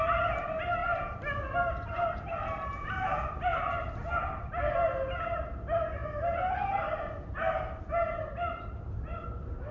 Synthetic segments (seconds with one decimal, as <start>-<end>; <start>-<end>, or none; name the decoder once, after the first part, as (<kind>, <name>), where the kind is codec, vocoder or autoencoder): none